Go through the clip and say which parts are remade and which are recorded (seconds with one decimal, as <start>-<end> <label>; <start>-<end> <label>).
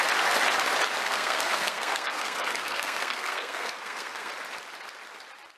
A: 0.0-1.0 recorded; 1.0-4.3 remade; 4.3-5.6 recorded